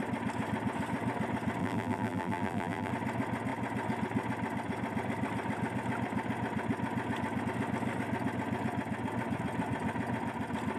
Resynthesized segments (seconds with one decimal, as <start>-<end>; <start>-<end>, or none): 1.6-2.9